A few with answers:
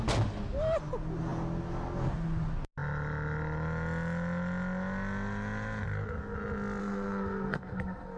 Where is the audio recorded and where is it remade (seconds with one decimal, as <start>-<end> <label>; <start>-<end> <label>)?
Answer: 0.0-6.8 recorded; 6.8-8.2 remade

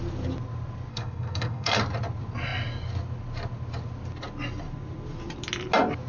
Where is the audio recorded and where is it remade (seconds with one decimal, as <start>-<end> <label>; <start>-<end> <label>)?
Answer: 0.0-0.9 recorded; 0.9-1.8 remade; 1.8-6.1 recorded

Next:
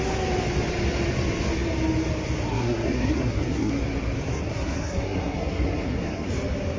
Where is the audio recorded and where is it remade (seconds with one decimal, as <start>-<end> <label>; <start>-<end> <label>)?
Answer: 0.0-2.5 recorded; 2.5-3.7 remade; 3.7-4.3 recorded; 4.3-6.3 remade; 6.3-6.8 recorded